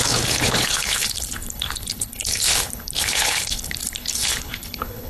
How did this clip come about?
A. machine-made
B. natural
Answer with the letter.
A